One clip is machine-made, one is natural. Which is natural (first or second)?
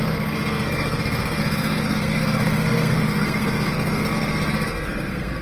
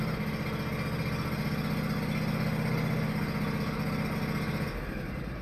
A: second